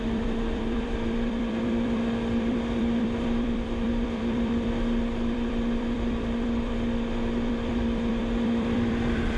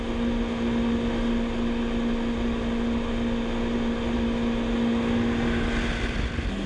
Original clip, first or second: second